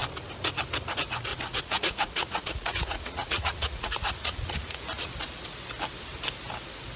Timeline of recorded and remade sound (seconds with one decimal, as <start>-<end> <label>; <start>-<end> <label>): 0.0-1.3 recorded; 1.3-5.1 remade; 5.1-7.0 recorded